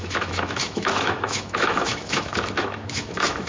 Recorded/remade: remade